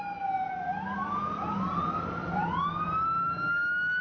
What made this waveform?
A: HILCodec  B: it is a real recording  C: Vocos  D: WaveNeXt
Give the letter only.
B